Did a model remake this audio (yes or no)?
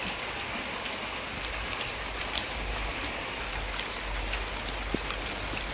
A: no